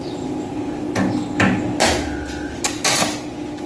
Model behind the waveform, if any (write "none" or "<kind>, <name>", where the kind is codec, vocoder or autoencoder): none